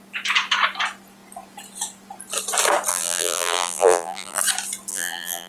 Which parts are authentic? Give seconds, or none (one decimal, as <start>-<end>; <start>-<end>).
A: 0.0-2.9; 4.4-4.9